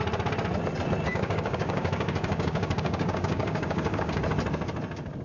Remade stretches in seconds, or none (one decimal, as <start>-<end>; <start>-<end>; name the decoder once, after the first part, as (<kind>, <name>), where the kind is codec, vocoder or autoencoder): 1.1-4.2 (codec, DAC)